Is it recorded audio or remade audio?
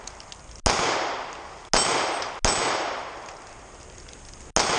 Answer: recorded